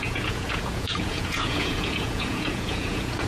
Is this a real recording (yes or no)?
no